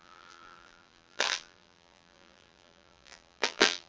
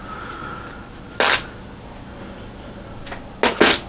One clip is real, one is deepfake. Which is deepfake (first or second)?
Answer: first